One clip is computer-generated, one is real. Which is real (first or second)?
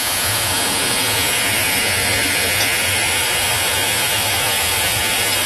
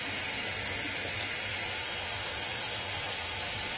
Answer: second